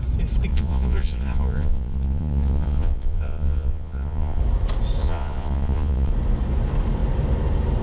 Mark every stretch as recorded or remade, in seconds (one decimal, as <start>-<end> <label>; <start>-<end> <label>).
0.0-0.5 recorded; 0.5-4.4 remade; 4.4-5.0 recorded; 5.0-6.1 remade; 6.1-7.8 recorded